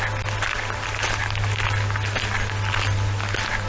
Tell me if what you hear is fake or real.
real